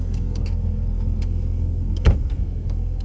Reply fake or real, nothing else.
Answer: fake